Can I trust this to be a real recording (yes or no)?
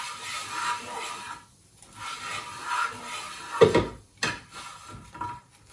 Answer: yes